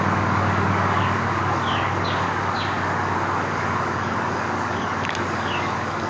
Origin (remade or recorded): remade